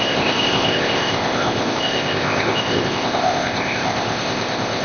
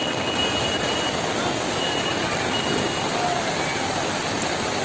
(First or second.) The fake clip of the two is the first